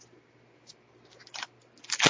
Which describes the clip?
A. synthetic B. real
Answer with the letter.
B